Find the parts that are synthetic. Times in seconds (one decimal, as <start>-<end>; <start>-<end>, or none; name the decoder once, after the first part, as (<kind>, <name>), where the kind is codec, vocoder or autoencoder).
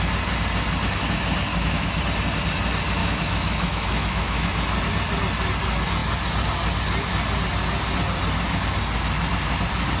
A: 1.5-2.0 (autoencoder, DAC-VAE); 3.0-4.5